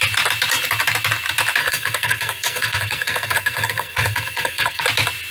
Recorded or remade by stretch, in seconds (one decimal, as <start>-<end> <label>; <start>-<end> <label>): 0.0-1.6 recorded; 1.6-4.8 remade; 4.8-5.3 recorded